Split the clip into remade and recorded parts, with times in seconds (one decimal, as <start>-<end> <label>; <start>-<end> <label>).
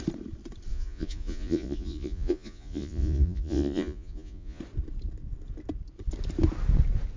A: 0.0-0.7 recorded; 0.7-4.6 remade; 4.6-7.2 recorded